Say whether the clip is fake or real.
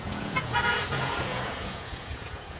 fake